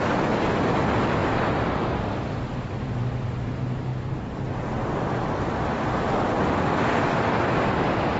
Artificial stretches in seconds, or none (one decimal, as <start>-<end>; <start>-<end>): 1.2-3.5; 7.0-8.2